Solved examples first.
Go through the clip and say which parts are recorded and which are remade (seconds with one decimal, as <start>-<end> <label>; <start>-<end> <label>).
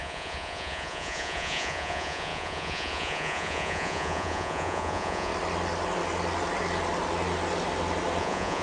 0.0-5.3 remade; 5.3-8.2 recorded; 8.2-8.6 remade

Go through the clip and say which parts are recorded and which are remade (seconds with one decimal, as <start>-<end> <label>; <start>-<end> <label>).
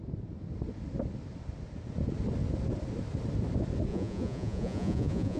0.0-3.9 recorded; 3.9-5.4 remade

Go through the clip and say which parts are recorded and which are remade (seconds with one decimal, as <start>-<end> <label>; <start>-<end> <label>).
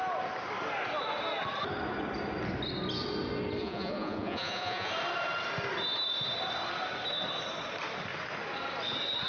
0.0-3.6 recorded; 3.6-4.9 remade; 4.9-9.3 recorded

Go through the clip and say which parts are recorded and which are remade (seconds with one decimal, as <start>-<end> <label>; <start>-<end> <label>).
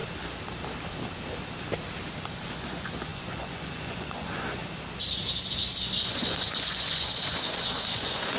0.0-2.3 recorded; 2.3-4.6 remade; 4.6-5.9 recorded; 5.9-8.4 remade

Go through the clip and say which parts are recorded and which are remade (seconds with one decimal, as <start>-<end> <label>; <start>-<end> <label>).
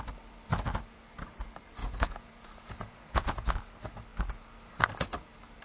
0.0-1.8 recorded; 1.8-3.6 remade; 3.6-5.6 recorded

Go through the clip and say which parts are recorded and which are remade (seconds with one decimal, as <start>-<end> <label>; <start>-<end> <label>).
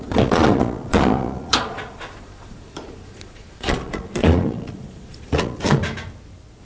0.0-5.8 remade; 5.8-6.6 recorded